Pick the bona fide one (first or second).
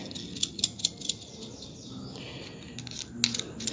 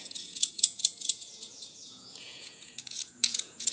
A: first